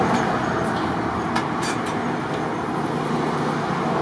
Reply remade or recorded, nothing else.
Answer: recorded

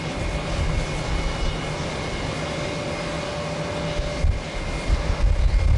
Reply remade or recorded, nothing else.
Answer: recorded